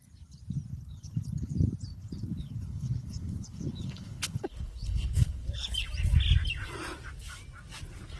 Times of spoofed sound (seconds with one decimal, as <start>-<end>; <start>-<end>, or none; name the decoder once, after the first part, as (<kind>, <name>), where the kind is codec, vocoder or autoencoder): 0.7-1.5 (codec, HILCodec); 1.9-5.7